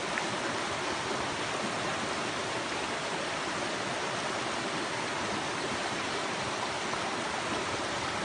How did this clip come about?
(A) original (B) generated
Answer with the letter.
A